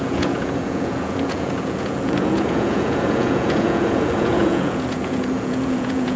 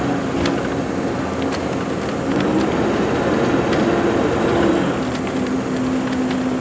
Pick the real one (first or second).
second